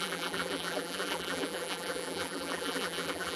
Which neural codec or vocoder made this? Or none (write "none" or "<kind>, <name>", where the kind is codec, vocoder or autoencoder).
vocoder, BigVGAN v2